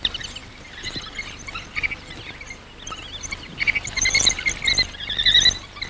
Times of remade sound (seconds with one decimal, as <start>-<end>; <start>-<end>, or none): 0.0-0.4; 3.2-5.9